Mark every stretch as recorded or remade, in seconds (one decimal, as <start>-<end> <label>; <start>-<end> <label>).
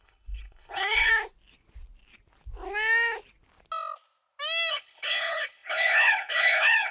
0.0-1.1 remade; 1.1-4.7 recorded; 4.7-6.9 remade